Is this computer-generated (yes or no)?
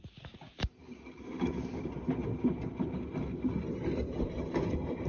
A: no